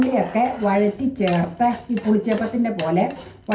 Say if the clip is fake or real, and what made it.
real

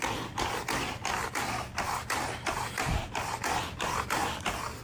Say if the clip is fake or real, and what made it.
fake, vocoder, BigVGAN v2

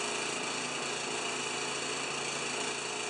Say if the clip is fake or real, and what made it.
real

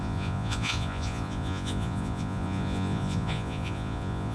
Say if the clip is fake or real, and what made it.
fake, vocoder, Vocos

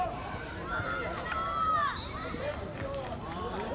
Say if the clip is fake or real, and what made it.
fake, vocoder, BigVGAN v2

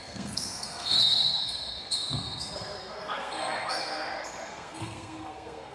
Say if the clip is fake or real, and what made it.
fake, codec, SNAC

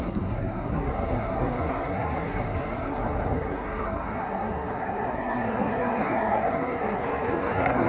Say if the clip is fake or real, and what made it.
fake, codec, SNAC